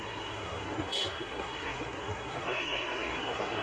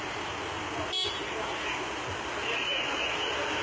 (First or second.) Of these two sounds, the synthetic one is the first